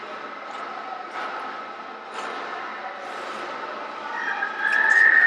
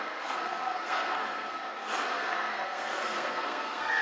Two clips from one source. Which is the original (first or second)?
first